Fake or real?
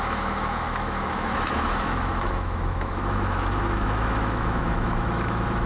fake